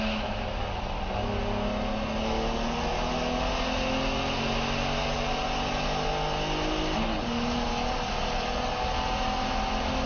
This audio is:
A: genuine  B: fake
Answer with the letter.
A